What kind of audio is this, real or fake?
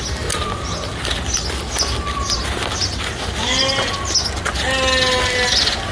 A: real